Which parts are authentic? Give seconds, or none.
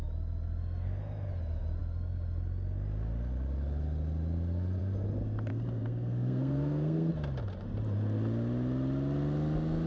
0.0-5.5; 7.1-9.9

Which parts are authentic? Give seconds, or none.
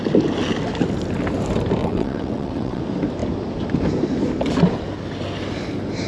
0.0-1.8; 2.8-6.1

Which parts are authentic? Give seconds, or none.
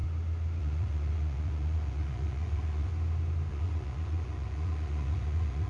0.0-0.6; 2.9-3.5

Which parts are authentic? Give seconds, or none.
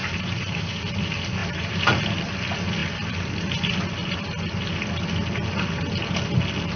0.8-1.4; 2.0-6.8